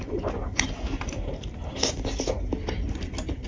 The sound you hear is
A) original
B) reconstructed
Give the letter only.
A